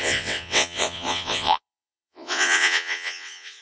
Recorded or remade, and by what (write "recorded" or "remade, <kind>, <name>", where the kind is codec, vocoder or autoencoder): remade, vocoder, WaveNeXt